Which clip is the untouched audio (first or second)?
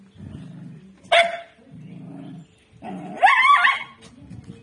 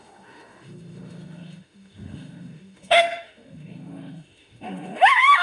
first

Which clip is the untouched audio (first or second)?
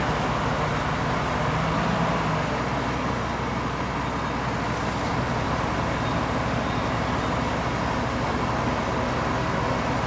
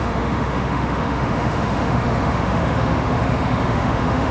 first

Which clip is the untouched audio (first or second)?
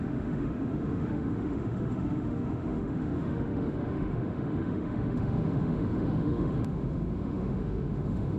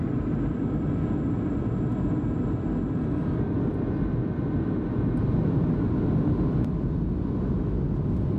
second